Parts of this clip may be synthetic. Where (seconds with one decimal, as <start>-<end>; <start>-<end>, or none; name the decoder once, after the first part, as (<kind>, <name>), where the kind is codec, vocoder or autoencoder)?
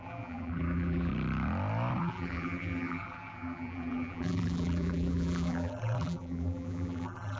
0.0-1.1 (vocoder, BigVGAN v2); 2.0-7.4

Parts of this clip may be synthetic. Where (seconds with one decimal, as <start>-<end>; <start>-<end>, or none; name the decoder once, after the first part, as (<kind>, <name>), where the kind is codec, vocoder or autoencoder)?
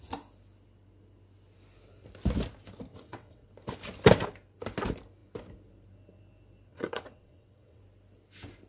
2.9-3.5 (vocoder, WaveNeXt); 6.7-7.8